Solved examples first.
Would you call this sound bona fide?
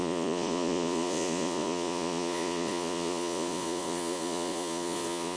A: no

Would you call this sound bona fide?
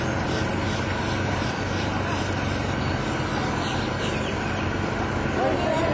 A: yes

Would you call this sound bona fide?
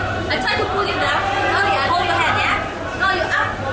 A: yes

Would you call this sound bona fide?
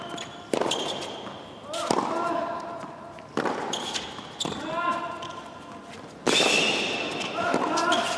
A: yes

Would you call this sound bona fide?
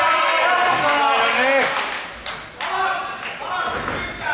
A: yes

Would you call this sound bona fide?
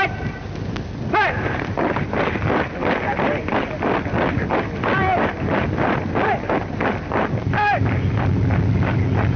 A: yes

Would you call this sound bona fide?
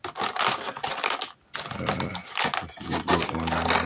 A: yes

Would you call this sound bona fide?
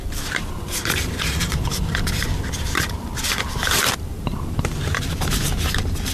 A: no